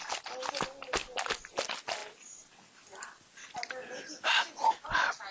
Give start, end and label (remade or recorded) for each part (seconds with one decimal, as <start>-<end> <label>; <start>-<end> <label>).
0.0-5.3 recorded